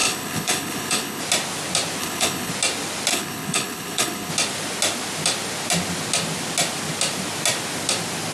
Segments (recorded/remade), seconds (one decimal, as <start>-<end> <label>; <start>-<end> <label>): 0.0-1.2 remade; 1.2-2.0 recorded; 2.0-2.5 remade; 2.5-3.1 recorded; 3.1-4.3 remade; 4.3-8.3 recorded